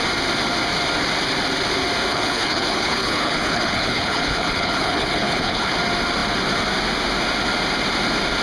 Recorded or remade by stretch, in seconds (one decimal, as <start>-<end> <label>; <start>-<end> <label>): 0.0-2.1 recorded; 2.1-5.7 remade; 5.7-8.4 recorded